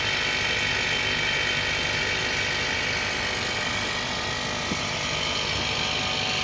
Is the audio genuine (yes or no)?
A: yes